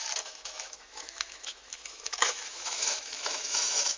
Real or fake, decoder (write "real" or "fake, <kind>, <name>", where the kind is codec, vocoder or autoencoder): fake, autoencoder, DAC-VAE